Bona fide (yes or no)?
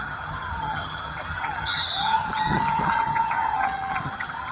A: no